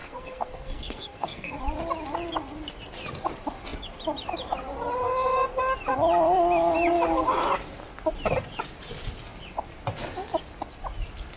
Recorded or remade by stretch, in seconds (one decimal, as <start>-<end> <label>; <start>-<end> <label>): 0.0-1.6 remade; 1.6-11.4 recorded